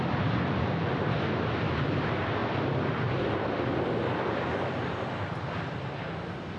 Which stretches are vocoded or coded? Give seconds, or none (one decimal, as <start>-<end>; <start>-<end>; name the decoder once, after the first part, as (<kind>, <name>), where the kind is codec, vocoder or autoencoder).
none